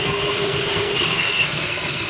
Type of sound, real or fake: fake